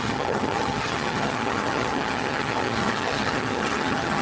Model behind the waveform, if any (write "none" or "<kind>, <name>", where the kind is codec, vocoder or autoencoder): vocoder, HiFi-GAN